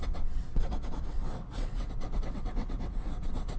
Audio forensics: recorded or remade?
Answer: remade